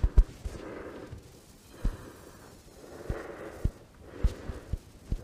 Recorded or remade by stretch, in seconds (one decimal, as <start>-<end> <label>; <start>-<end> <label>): 0.0-5.2 recorded